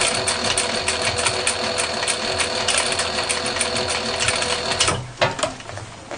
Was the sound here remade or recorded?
recorded